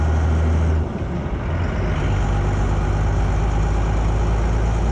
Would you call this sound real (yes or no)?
yes